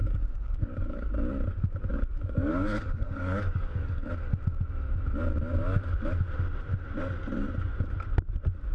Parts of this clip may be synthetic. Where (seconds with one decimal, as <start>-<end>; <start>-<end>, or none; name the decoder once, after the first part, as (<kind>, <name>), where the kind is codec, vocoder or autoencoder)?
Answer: 0.0-1.1 (codec, DAC); 1.9-4.1